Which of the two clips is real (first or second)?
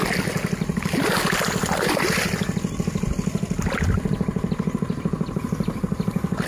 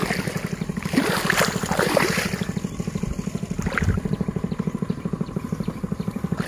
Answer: first